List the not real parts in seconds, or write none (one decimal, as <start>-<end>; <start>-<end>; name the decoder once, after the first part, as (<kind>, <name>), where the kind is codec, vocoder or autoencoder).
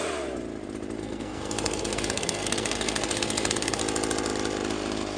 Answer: 1.0-3.8 (codec, SNAC)